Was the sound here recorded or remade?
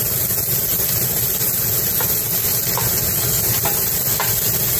recorded